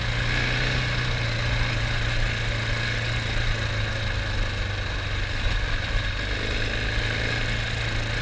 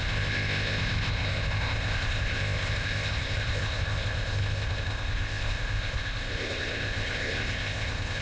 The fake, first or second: second